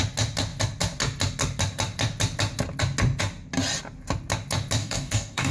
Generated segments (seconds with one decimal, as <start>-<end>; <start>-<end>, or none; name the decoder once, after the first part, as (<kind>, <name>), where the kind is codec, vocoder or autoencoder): 4.8-5.5 (codec, DAC)